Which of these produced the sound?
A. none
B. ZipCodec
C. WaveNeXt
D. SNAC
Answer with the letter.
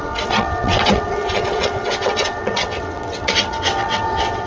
C